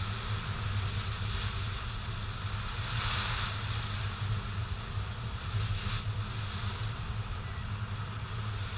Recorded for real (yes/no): yes